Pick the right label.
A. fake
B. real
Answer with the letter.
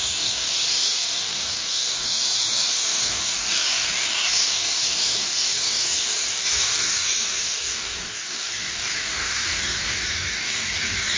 A